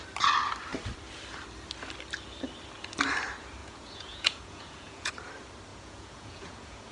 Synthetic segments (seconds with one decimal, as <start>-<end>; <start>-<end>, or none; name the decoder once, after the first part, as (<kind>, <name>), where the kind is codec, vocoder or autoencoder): 3.6-5.1 (vocoder, Vocos); 5.7-6.9